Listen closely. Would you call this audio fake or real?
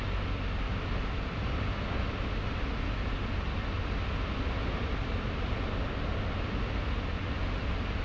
real